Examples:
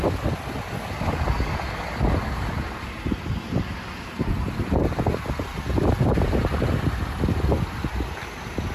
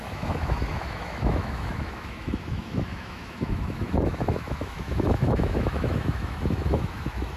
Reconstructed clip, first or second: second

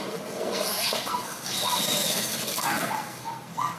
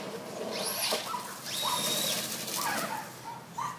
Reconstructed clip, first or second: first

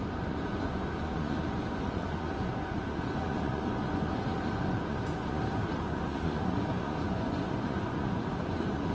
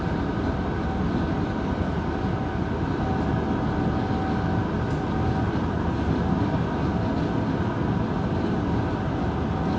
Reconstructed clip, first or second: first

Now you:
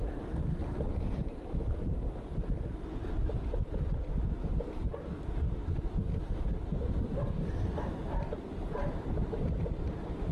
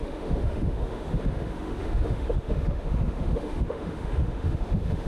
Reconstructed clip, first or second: second